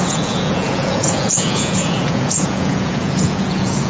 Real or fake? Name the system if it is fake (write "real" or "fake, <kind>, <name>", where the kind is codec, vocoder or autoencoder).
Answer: fake, vocoder, Vocos